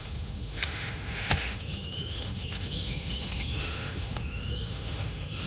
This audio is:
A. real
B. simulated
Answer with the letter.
B